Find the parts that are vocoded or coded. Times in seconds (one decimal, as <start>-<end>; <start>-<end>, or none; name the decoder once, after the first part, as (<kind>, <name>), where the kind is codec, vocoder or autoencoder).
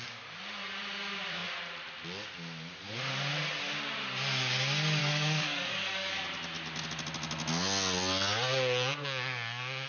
5.0-6.1 (codec, DAC)